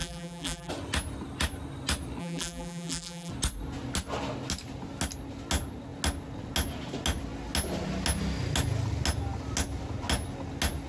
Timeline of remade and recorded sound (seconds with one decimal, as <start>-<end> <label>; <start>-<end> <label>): 0.0-0.7 remade; 0.7-2.2 recorded; 2.2-3.3 remade; 3.3-10.9 recorded

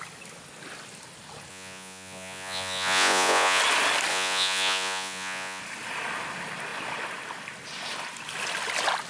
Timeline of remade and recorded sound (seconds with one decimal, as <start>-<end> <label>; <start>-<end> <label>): 0.0-1.5 recorded; 1.5-3.6 remade; 3.6-4.1 recorded; 4.1-5.6 remade; 5.6-9.1 recorded

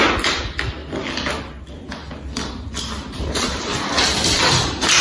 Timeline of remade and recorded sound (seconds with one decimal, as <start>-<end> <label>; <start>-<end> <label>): 0.0-0.8 recorded; 0.8-1.4 remade; 1.4-2.0 recorded; 2.0-5.0 remade